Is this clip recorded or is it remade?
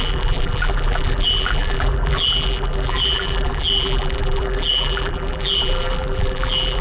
remade